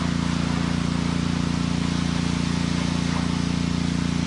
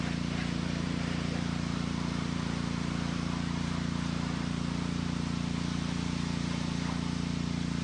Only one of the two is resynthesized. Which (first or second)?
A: second